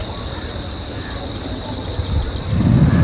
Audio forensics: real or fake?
fake